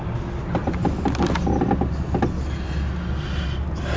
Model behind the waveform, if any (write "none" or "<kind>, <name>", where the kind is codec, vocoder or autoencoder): none